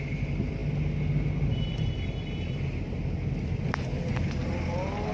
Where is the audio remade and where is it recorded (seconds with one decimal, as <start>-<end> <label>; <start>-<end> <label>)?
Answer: 0.0-5.1 recorded